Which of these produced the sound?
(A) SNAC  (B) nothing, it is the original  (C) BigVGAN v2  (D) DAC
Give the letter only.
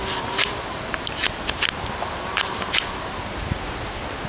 B